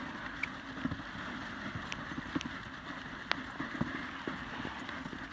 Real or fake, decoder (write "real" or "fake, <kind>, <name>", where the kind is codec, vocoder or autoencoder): real